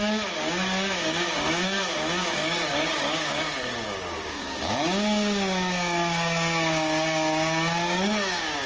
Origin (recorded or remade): remade